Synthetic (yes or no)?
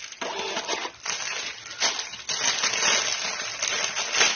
no